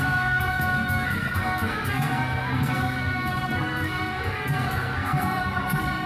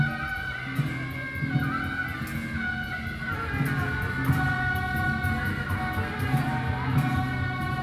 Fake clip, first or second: first